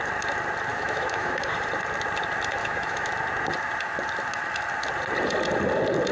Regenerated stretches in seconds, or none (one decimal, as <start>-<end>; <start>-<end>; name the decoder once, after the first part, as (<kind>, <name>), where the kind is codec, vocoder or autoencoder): 0.7-1.4 (autoencoder, DAC-VAE); 2.6-3.1